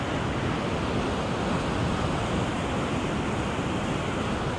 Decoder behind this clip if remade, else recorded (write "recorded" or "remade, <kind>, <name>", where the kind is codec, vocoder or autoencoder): recorded